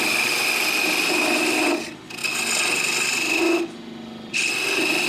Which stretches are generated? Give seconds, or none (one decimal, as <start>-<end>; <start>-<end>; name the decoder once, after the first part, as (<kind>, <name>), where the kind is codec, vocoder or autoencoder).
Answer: none